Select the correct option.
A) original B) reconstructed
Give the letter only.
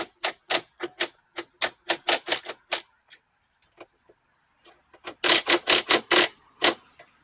A